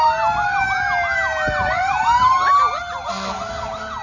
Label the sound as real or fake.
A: real